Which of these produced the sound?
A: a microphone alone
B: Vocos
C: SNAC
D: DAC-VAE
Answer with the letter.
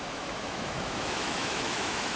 D